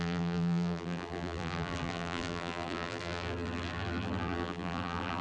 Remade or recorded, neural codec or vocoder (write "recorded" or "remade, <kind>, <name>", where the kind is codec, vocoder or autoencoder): remade, vocoder, BigVGAN v2